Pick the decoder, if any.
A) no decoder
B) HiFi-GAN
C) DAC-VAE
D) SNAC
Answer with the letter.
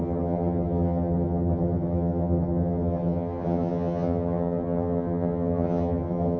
B